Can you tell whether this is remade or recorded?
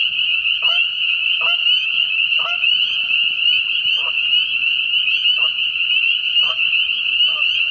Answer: remade